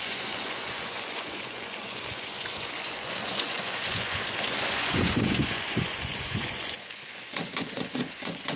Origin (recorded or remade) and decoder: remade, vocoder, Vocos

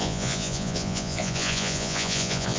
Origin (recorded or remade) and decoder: remade, vocoder, Vocos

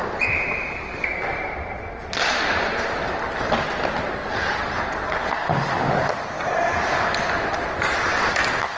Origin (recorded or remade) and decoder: recorded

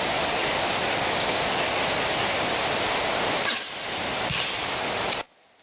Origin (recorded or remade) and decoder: recorded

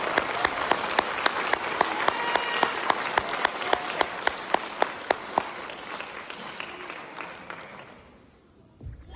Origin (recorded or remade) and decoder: recorded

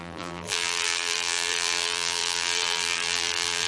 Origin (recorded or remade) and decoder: remade, vocoder, BigVGAN v2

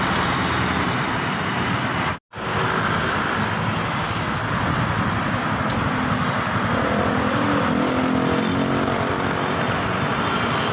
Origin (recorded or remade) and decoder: recorded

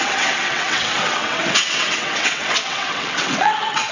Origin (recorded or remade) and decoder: remade, vocoder, WaveNeXt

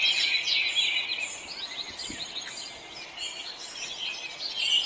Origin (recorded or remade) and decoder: recorded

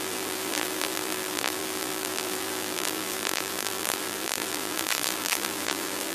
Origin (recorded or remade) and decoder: remade, vocoder, BigVGAN v2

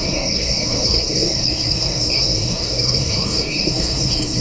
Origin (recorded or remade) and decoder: remade, codec, SNAC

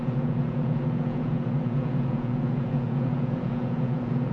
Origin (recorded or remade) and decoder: remade, vocoder, Vocos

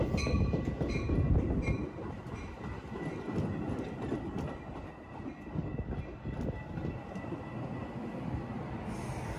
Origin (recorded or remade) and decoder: recorded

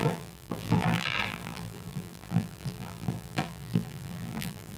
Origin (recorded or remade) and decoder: remade, vocoder, BigVGAN v2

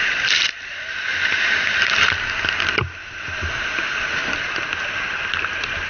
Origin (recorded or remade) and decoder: recorded